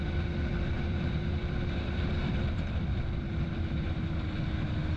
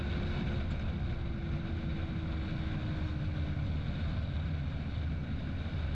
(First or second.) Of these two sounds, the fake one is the first